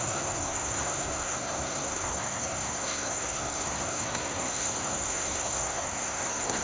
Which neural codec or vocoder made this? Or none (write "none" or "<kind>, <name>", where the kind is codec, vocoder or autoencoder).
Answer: codec, SNAC